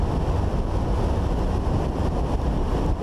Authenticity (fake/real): real